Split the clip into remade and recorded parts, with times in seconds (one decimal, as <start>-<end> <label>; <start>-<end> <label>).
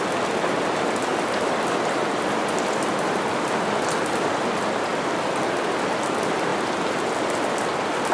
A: 0.0-1.1 recorded; 1.1-3.8 remade; 3.8-8.1 recorded